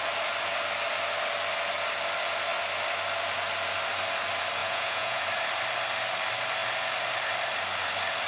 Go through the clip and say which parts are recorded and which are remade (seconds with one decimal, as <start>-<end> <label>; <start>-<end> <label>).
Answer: 0.0-4.6 recorded; 4.6-5.2 remade; 5.2-8.3 recorded